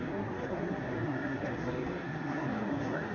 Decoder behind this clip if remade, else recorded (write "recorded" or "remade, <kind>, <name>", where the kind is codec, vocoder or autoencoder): remade, codec, SNAC